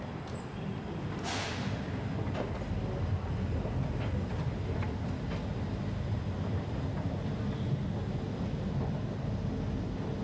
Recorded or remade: recorded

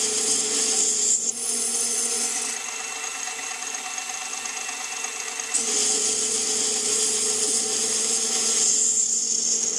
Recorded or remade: recorded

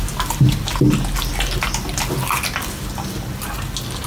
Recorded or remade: recorded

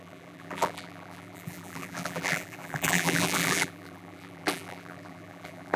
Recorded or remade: remade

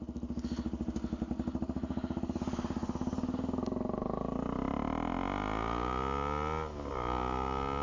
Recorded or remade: recorded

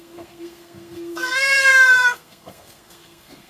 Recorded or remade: remade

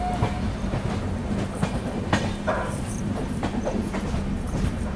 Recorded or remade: remade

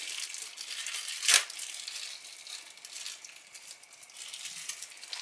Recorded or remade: recorded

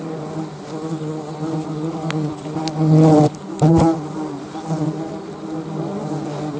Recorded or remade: recorded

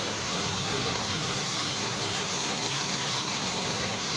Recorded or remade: remade